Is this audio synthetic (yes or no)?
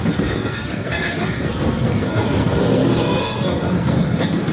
yes